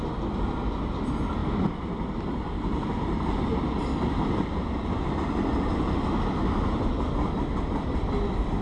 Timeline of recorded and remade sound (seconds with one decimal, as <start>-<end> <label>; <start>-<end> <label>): 0.0-8.6 recorded